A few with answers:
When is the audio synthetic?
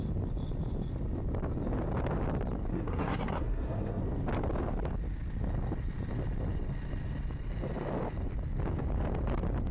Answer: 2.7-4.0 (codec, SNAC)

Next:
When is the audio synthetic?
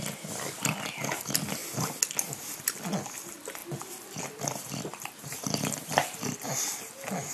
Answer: 4.9-5.5 (vocoder, BigVGAN v2)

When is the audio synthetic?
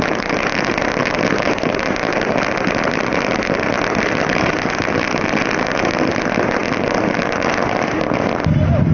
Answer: none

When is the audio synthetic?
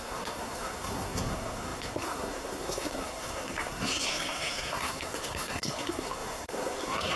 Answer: 0.0-7.2 (codec, SNAC)